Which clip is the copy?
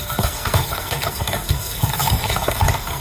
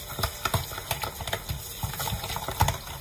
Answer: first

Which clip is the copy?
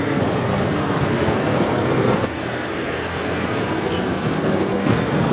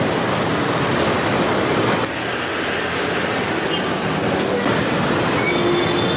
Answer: first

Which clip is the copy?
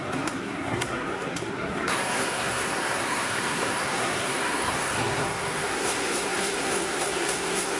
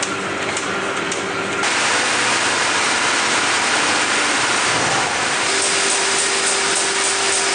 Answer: first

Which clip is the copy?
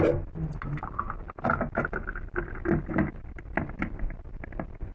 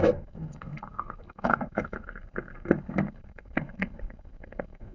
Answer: second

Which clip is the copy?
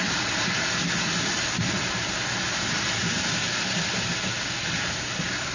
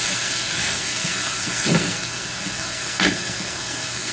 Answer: second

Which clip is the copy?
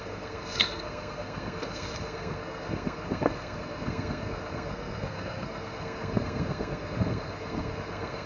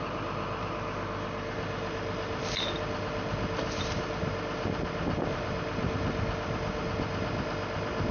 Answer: first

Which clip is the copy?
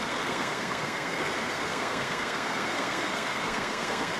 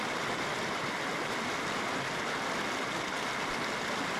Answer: first